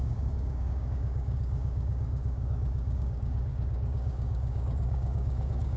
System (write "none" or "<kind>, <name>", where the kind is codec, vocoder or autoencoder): codec, DAC